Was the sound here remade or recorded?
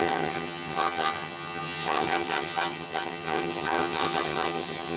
remade